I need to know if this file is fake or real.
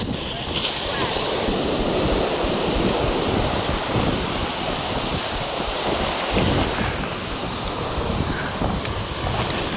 real